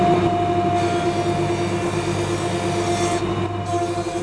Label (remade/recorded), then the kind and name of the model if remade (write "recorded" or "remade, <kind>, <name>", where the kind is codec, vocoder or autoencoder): recorded